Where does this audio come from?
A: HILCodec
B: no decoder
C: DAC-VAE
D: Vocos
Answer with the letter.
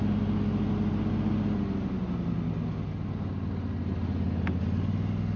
B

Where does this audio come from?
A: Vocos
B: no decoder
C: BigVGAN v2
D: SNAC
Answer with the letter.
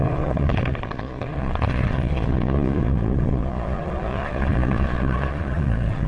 A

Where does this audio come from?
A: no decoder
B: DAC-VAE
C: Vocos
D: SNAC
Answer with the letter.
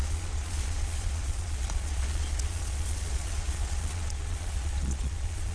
C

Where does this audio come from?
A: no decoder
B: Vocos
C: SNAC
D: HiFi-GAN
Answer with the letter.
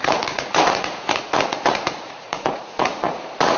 B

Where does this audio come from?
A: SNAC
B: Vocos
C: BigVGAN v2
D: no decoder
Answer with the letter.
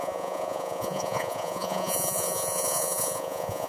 B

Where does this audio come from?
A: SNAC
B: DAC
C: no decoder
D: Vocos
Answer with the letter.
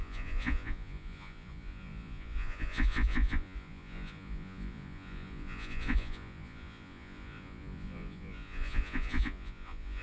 D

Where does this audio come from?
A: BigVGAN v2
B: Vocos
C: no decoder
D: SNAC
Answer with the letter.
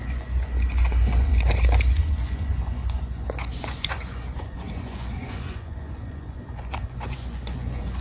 B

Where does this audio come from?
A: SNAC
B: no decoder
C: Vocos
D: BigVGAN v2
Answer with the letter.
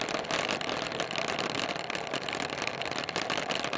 B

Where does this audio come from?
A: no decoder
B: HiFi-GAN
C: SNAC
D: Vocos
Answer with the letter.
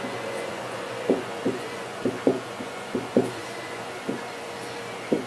D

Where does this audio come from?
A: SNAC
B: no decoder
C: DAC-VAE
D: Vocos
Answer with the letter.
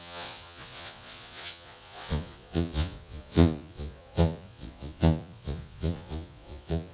D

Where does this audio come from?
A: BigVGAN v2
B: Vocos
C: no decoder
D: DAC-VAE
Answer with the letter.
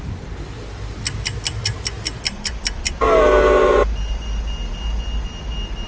C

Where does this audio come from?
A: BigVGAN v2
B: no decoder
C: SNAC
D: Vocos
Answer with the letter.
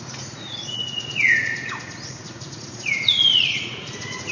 D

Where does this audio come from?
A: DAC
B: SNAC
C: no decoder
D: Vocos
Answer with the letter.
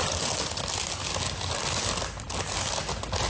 C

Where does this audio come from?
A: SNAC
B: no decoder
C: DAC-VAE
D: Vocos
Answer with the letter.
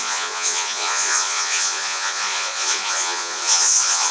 D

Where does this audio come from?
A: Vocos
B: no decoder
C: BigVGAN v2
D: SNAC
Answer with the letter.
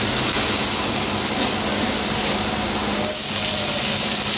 B